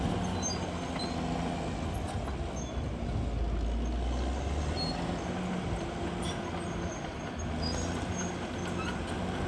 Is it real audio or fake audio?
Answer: real